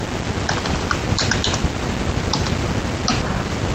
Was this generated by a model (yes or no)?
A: no